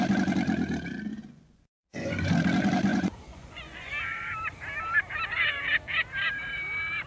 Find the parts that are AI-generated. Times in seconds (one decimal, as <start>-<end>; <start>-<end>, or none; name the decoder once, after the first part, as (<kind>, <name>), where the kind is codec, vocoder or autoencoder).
1.1-2.4 (vocoder, Vocos); 2.9-3.9